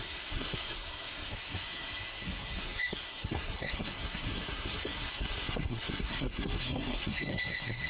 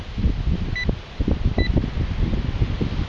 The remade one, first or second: first